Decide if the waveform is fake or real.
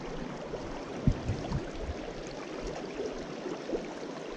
real